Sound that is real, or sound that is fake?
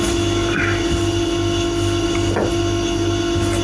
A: real